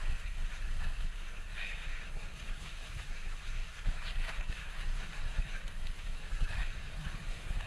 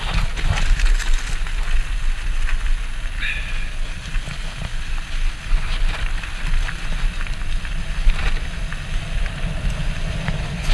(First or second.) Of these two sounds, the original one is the second